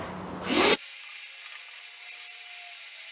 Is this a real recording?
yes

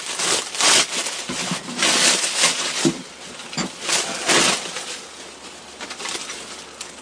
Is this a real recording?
yes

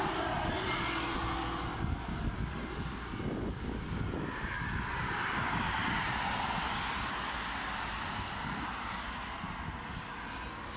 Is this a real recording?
yes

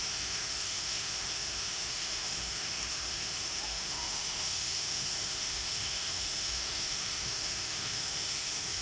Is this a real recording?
no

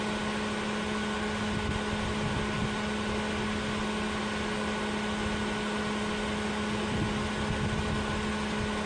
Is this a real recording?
yes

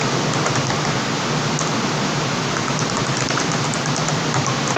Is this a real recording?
yes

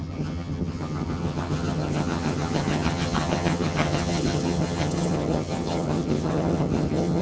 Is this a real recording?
no